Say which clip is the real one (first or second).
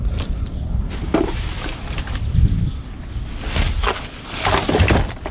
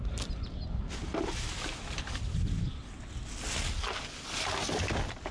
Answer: second